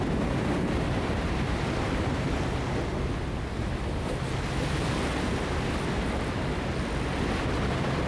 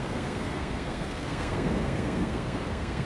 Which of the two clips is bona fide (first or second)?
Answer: first